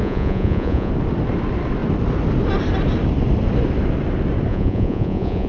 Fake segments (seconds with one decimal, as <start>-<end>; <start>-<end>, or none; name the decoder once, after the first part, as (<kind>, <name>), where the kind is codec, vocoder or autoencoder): 0.0-0.9 (vocoder, Vocos); 4.5-5.5